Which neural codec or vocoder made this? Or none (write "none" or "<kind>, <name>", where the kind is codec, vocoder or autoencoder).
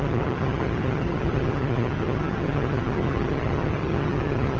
vocoder, HiFi-GAN